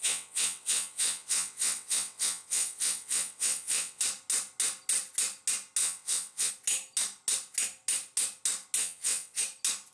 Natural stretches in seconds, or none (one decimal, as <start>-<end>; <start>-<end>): 4.0-5.8; 6.5-8.8; 9.4-9.9